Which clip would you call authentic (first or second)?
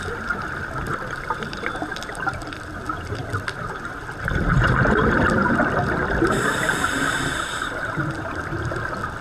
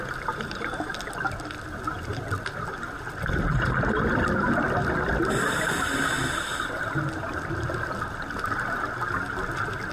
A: second